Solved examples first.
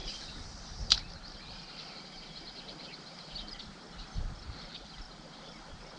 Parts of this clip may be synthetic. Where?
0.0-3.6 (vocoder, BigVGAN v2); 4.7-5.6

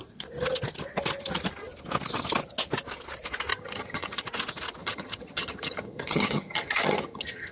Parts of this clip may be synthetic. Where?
3.5-4.2 (vocoder, HiFi-GAN); 4.8-7.5

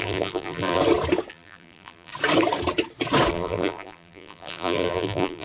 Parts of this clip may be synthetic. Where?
0.0-0.8 (vocoder, BigVGAN v2); 1.3-2.1; 3.3-5.4

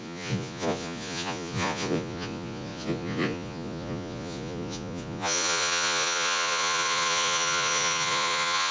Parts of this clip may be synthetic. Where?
0.0-8.7 (vocoder, Vocos)

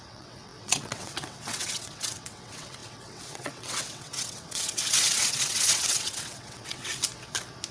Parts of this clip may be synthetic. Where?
0.0-6.9 (vocoder, WaveNeXt)

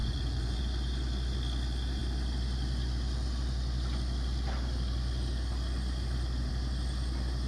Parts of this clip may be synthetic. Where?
0.0-0.6 (vocoder, Vocos)

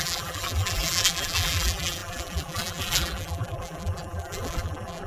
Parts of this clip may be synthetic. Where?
0.0-5.1 (vocoder, BigVGAN v2)

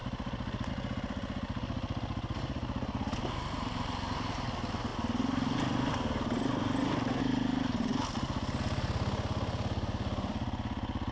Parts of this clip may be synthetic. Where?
none